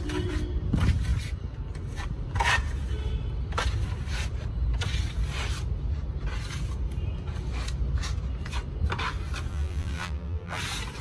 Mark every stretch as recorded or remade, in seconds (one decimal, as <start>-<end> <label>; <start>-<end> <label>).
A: 0.0-9.5 recorded; 9.5-10.6 remade; 10.6-11.0 recorded

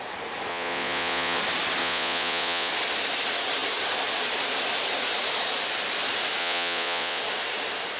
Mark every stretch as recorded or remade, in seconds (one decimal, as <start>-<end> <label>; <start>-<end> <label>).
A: 0.0-0.5 recorded; 0.5-1.4 remade; 1.4-1.8 recorded; 1.8-2.7 remade; 2.7-6.4 recorded; 6.4-7.2 remade; 7.2-8.0 recorded

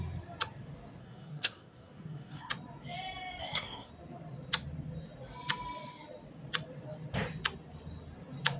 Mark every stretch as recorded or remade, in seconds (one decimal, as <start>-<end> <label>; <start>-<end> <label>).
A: 0.0-1.0 recorded; 1.0-2.5 remade; 2.5-3.4 recorded; 3.4-3.9 remade; 3.9-8.6 recorded

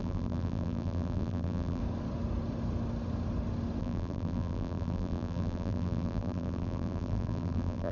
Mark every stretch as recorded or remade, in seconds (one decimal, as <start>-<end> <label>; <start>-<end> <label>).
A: 0.0-1.8 remade; 1.8-3.8 recorded; 3.8-7.9 remade

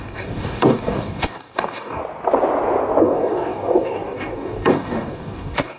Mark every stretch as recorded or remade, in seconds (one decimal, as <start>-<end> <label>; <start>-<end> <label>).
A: 0.0-2.0 remade; 2.0-3.0 recorded; 3.0-5.8 remade

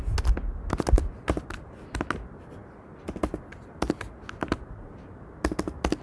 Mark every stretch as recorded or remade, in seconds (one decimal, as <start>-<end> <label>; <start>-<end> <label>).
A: 0.0-6.0 recorded

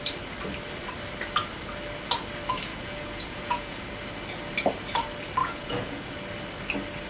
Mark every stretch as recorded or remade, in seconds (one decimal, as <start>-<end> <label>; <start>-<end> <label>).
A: 0.0-2.7 recorded; 2.7-3.8 remade; 3.8-5.4 recorded; 5.4-6.1 remade; 6.1-7.1 recorded

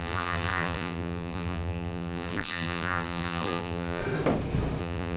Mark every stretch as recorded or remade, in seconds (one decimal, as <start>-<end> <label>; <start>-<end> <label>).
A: 0.0-4.0 remade; 4.0-4.8 recorded; 4.8-5.2 remade